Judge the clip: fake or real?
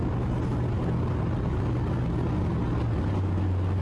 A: real